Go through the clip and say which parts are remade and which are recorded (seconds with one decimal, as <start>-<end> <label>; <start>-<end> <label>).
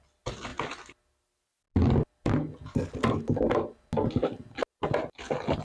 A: 0.0-5.6 recorded